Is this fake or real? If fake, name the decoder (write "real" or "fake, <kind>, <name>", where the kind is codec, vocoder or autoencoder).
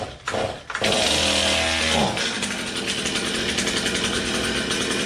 real